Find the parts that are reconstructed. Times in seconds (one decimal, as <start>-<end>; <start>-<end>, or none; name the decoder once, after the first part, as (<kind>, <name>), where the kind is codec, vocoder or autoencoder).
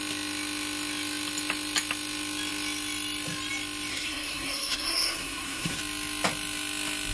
3.9-5.8 (codec, SNAC)